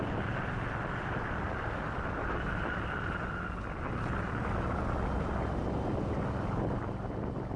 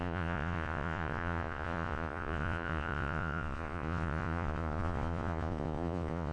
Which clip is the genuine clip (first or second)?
first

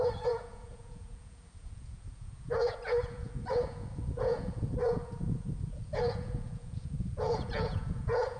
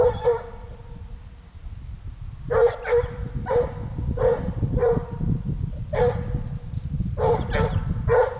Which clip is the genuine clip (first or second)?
second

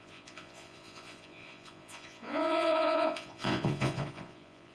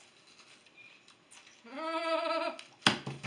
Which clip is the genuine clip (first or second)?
second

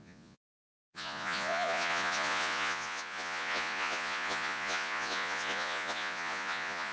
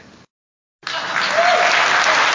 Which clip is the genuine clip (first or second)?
second